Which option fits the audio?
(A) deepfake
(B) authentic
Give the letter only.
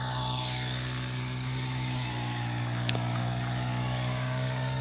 A